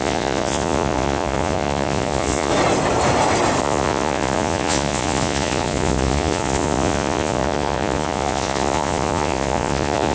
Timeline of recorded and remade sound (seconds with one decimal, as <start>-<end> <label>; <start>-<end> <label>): 0.0-2.5 remade; 2.5-3.6 recorded; 3.6-10.1 remade